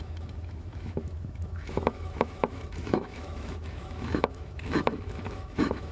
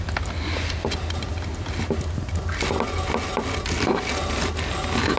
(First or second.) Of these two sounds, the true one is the second